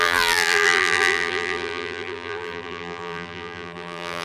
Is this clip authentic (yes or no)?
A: no